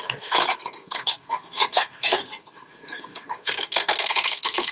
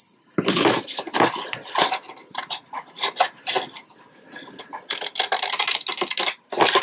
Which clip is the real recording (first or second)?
second